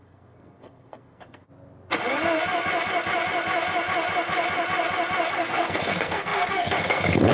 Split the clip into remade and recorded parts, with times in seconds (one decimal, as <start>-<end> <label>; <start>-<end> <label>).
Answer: 0.0-1.4 remade; 1.4-5.3 recorded; 5.3-7.3 remade